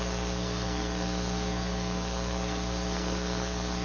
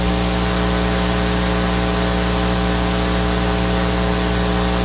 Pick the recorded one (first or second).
second